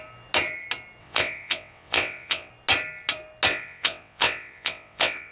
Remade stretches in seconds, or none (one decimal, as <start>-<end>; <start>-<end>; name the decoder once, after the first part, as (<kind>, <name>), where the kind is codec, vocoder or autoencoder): 1.0-2.5 (vocoder, WaveNeXt); 3.5-5.3